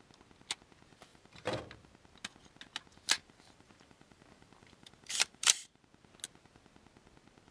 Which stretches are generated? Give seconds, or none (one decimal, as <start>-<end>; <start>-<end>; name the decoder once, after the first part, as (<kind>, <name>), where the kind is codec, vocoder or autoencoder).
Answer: 1.1-1.6 (vocoder, BigVGAN v2); 3.2-5.8

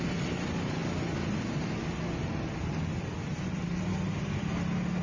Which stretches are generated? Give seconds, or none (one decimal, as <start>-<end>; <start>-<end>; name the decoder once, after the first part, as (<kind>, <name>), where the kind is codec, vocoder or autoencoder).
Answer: none

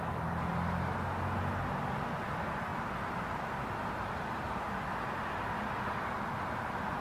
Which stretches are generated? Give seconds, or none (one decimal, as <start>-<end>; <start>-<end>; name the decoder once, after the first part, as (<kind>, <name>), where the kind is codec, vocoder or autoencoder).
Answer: none

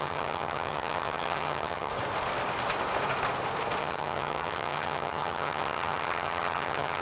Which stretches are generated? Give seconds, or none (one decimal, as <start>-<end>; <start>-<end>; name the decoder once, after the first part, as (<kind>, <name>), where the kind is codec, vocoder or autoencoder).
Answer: 0.0-1.9 (vocoder, HiFi-GAN); 3.8-7.0

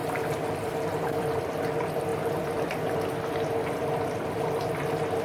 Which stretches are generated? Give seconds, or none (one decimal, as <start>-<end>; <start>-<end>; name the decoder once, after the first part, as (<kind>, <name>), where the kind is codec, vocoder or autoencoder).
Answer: 0.0-1.6 (vocoder, BigVGAN v2)

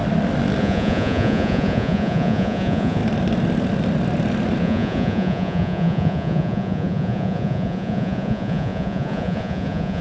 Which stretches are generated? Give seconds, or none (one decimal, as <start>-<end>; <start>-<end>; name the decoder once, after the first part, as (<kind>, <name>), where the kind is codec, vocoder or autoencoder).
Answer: 0.6-3.0 (vocoder, Vocos); 4.6-10.0